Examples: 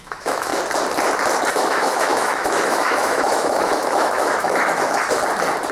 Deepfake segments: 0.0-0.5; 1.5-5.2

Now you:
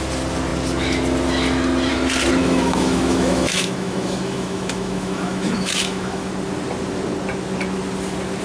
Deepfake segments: 2.4-6.3

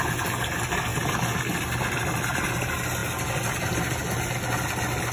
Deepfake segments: none

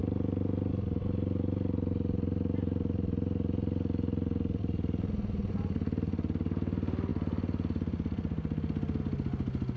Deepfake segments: none